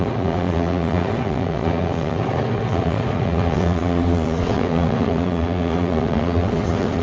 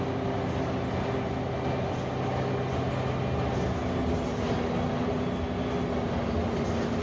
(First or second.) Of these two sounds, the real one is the second